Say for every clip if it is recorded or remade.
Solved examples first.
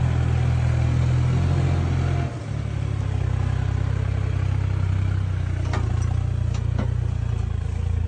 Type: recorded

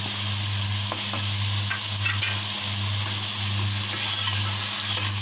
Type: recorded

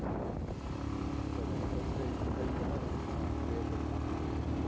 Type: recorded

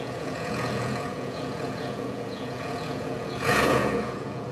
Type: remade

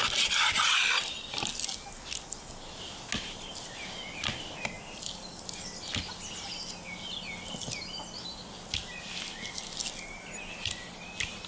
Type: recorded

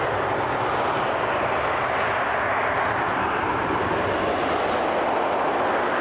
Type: recorded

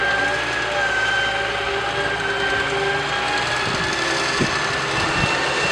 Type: recorded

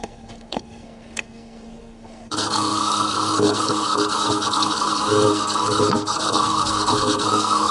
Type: remade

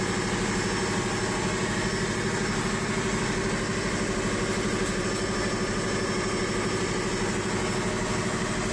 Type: recorded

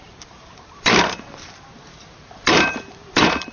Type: remade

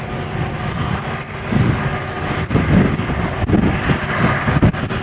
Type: recorded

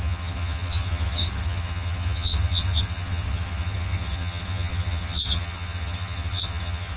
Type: remade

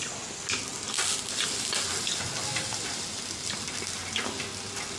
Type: recorded